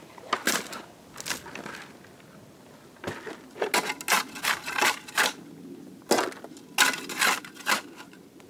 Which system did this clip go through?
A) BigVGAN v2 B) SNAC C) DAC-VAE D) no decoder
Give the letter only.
D